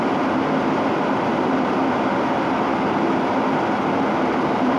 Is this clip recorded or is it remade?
recorded